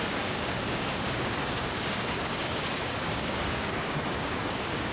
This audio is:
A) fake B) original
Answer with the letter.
A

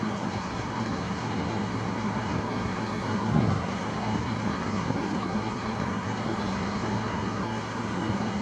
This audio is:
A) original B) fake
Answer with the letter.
B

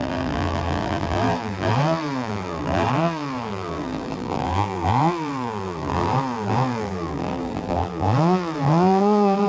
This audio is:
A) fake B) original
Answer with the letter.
A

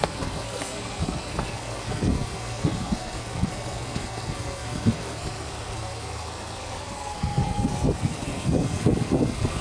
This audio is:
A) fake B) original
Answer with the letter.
A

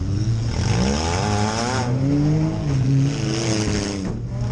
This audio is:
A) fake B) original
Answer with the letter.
B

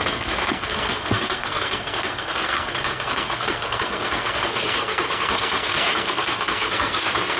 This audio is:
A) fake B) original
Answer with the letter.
A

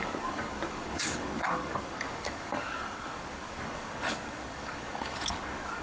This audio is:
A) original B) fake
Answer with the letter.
B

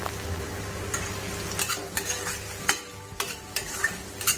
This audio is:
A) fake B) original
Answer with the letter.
B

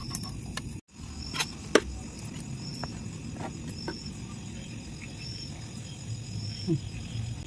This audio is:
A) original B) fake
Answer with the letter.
A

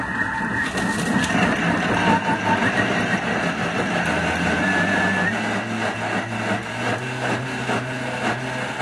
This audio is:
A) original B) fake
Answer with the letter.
A